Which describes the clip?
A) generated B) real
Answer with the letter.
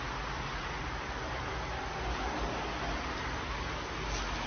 B